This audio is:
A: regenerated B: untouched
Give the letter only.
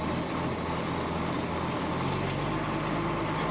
B